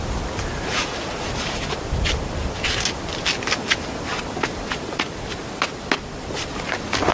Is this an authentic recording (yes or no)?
yes